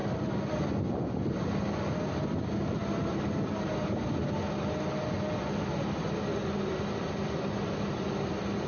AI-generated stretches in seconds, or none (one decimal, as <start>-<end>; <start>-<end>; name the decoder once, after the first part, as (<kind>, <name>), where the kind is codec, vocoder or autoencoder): none